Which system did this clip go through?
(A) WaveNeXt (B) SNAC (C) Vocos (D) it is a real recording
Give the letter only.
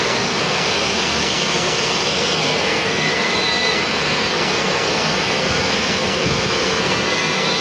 B